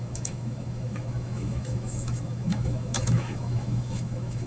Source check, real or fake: fake